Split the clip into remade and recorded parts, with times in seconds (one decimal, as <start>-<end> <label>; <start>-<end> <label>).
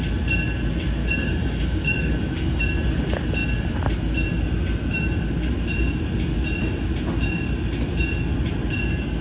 0.0-1.0 recorded; 1.0-2.6 remade; 2.6-9.2 recorded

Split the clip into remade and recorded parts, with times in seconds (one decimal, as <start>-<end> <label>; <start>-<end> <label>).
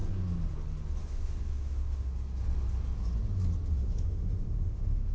0.0-1.0 recorded; 1.0-2.1 remade; 2.1-3.7 recorded; 3.7-5.1 remade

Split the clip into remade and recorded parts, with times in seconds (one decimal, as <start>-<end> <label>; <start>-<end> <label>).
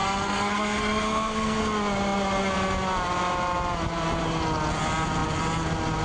0.0-1.6 remade; 1.6-6.0 recorded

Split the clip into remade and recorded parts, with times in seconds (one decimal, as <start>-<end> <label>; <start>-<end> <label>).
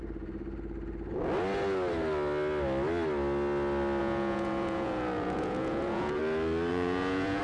0.0-4.0 recorded; 4.0-6.2 remade; 6.2-6.7 recorded; 6.7-7.4 remade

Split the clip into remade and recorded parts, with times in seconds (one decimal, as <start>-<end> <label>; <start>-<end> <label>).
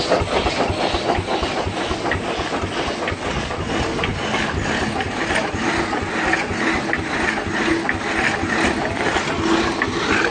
0.0-10.3 recorded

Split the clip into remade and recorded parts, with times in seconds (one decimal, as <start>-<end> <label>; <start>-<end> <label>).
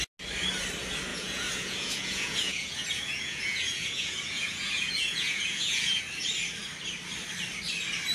0.0-1.1 recorded; 1.1-6.0 remade; 6.0-8.1 recorded